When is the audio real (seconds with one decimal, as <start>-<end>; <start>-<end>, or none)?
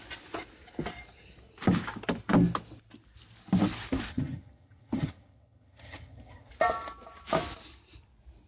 0.0-4.1; 6.5-8.5